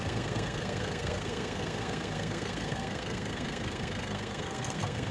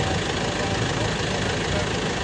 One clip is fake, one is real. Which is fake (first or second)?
first